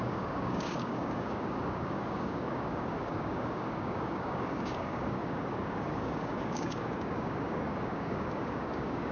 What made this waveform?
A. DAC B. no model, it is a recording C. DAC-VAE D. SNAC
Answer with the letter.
A